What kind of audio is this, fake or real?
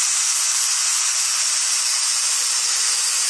real